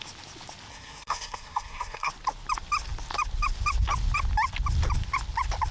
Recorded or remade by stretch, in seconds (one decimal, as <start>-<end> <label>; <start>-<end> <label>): 0.0-0.7 recorded; 0.7-2.1 remade; 2.1-5.7 recorded